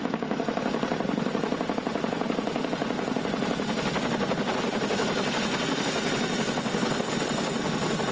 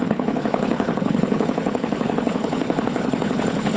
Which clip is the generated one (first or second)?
second